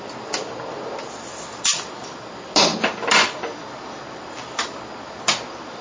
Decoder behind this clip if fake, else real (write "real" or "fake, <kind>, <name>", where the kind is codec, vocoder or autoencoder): real